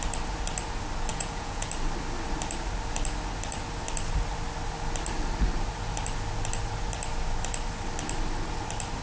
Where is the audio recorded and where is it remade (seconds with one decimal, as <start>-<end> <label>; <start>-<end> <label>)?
0.0-1.1 recorded; 1.1-1.7 remade; 1.7-9.0 recorded